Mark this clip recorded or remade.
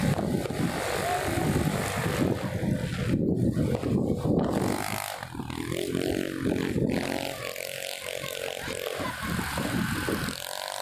recorded